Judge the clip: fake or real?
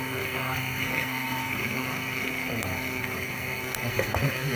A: fake